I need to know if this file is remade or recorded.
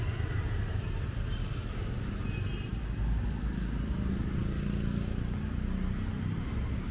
recorded